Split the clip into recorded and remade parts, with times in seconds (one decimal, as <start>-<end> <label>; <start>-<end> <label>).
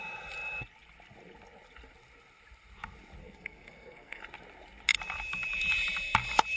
0.0-3.2 recorded; 3.2-4.2 remade; 4.2-6.6 recorded